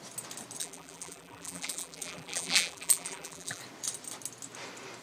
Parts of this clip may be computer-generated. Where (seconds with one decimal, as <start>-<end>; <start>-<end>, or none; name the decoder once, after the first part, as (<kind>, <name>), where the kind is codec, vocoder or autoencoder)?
0.6-3.6 (vocoder, BigVGAN v2)